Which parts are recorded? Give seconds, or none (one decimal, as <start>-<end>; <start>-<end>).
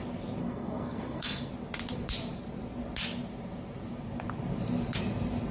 0.0-0.4; 1.5-5.5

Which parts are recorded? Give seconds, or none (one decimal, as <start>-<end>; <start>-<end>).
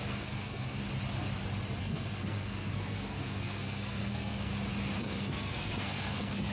0.8-1.8; 4.5-5.0